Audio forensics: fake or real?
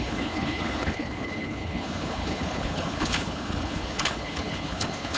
fake